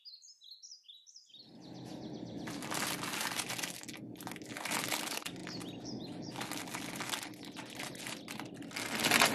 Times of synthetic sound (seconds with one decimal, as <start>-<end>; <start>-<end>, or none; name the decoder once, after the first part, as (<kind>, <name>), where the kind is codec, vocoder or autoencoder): none